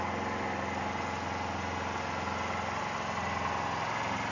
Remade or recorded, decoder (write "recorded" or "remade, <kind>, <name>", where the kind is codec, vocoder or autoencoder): recorded